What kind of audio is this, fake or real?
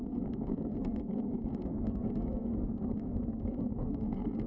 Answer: fake